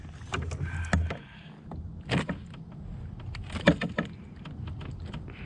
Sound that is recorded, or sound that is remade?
recorded